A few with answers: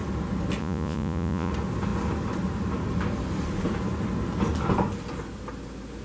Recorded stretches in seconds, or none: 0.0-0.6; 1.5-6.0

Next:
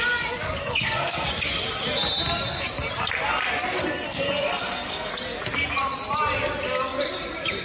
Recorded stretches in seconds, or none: 0.0-0.6; 1.3-3.8; 5.1-7.6

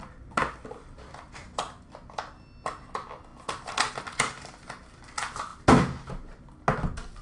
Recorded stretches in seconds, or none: 0.0-7.2

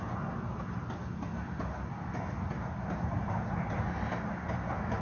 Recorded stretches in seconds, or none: 0.0-5.0

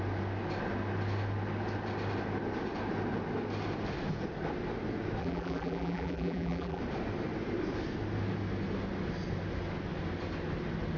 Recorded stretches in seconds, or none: 0.0-5.2; 6.8-11.0

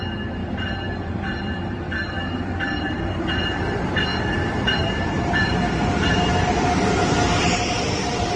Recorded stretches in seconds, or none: 6.5-7.4

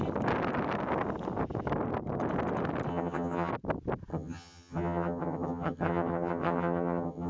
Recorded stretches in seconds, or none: 0.0-2.9; 3.5-4.1

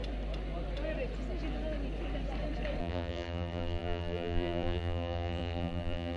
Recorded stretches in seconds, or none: 0.0-2.8